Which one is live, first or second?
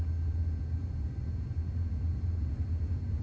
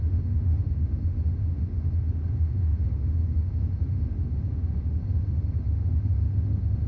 first